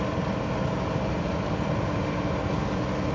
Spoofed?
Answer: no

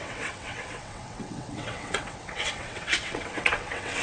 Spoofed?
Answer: yes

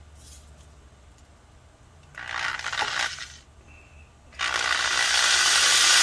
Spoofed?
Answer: no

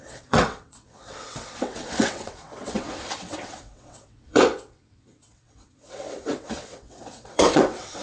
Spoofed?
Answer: yes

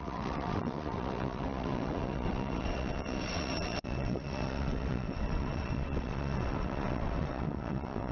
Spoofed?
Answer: yes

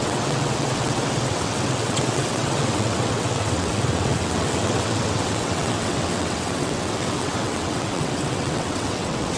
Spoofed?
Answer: yes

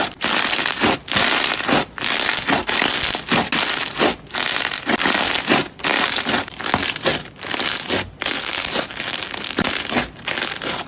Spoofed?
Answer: no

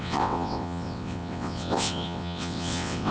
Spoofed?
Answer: yes